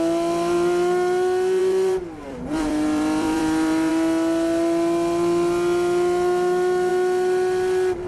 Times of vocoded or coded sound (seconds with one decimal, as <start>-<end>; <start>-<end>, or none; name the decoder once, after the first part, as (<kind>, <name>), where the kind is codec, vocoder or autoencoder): 1.6-3.9 (vocoder, BigVGAN v2)